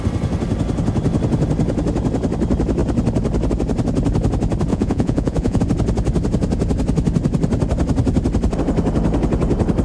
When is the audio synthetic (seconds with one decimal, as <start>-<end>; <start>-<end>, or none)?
4.7-5.6

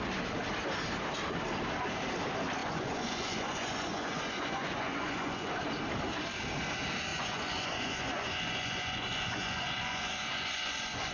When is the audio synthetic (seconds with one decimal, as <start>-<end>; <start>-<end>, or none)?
2.6-5.5; 7.1-11.1

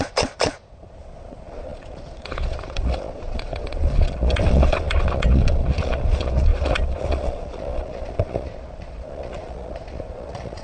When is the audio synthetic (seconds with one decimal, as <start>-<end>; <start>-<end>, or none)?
0.0-10.6

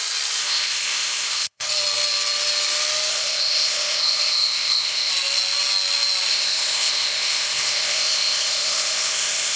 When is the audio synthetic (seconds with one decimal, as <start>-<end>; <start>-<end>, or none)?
0.4-1.7; 3.1-5.1; 6.3-9.6

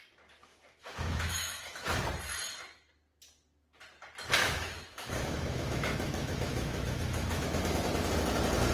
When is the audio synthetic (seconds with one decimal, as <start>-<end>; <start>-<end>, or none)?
0.5-2.0; 4.4-8.1